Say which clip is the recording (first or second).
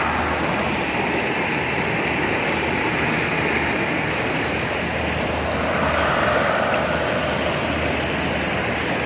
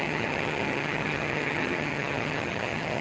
first